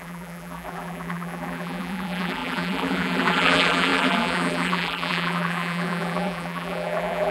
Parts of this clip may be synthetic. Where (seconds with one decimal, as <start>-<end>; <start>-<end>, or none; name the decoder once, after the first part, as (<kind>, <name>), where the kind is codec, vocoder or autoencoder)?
0.0-7.3 (vocoder, BigVGAN v2)